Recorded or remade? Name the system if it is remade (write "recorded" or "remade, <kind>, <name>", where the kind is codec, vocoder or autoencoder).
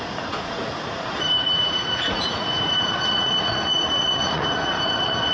remade, vocoder, Vocos